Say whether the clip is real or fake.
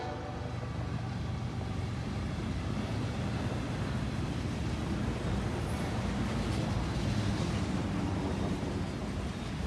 real